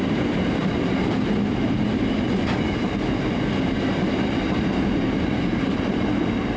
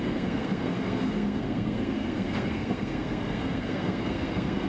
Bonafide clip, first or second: first